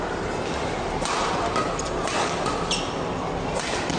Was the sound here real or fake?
fake